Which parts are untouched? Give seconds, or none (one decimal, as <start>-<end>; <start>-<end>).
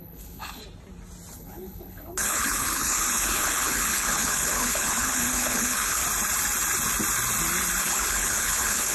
0.6-1.3; 6.0-7.8